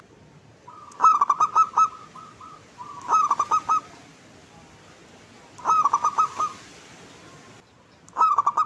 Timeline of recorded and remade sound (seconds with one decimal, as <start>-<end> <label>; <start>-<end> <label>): 0.0-8.7 recorded